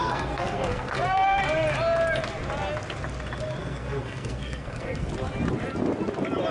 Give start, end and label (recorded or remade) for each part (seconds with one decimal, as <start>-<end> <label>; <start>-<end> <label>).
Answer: 0.0-1.4 remade; 1.4-3.6 recorded; 3.6-5.1 remade; 5.1-6.5 recorded